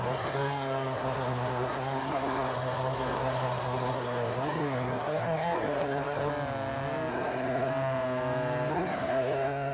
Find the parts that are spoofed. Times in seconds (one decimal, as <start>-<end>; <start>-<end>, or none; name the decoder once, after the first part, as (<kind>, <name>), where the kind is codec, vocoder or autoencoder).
0.0-6.3 (codec, SNAC); 7.1-7.7; 8.7-9.7